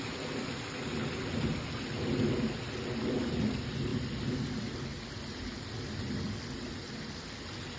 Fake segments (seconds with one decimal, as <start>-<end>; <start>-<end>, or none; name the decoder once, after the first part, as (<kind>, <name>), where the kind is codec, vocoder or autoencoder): 3.9-4.5 (vocoder, BigVGAN v2)